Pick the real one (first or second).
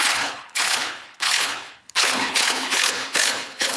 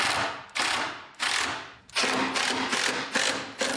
second